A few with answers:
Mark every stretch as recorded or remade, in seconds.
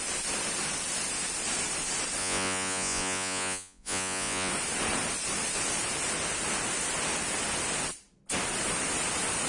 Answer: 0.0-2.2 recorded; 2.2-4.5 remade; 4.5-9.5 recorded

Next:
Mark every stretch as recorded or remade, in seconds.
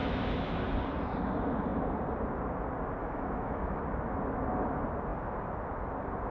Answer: 0.0-0.6 remade; 0.6-3.0 recorded; 3.0-3.8 remade; 3.8-6.3 recorded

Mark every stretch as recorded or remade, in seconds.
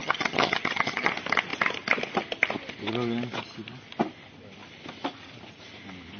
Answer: 0.0-1.1 remade; 1.1-6.2 recorded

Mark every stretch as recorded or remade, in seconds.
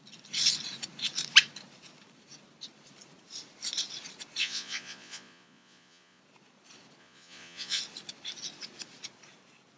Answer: 0.0-4.4 recorded; 4.4-6.2 remade; 6.2-7.0 recorded; 7.0-7.8 remade; 7.8-9.8 recorded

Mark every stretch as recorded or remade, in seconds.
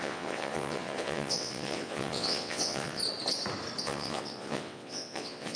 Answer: 0.0-3.0 remade; 3.0-3.8 recorded; 3.8-5.6 remade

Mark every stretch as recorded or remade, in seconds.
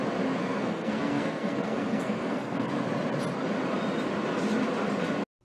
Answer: 0.0-0.4 recorded; 0.4-2.7 remade; 2.7-5.4 recorded